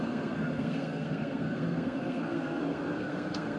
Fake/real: fake